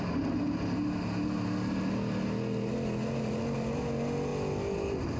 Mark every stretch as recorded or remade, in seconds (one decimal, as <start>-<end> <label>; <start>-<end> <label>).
0.0-5.2 recorded